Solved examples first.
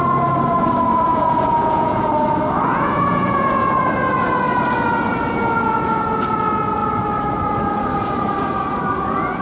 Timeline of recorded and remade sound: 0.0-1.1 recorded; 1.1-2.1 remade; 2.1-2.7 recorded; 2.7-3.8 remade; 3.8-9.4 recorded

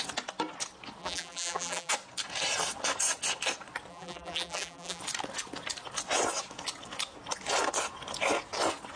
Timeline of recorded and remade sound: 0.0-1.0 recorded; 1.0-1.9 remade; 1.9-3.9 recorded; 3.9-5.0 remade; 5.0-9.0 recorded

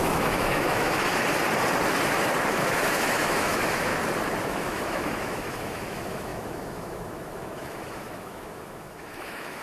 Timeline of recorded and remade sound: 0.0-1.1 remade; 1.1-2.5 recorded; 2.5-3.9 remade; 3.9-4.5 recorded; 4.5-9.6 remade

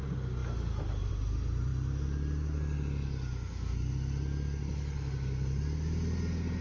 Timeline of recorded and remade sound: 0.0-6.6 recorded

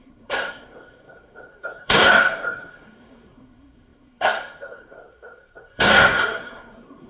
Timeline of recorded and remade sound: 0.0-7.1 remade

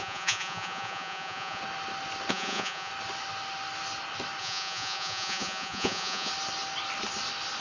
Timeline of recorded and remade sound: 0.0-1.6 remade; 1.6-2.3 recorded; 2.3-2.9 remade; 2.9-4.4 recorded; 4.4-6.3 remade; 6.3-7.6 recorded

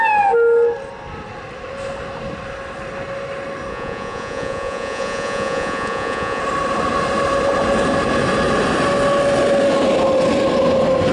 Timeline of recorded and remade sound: 0.0-3.7 recorded; 3.7-6.4 remade; 6.4-11.1 recorded

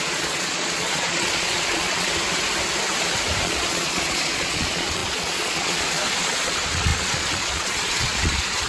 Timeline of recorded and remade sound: 0.0-2.1 remade; 2.1-3.4 recorded; 3.4-8.7 remade